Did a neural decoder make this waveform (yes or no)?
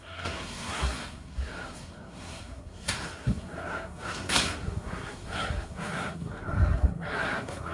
yes